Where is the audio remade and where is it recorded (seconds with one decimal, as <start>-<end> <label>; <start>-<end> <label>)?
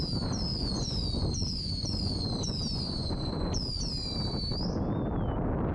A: 0.0-0.5 recorded; 0.5-3.9 remade; 3.9-5.7 recorded